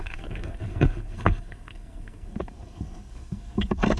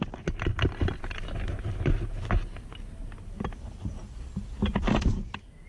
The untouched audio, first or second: second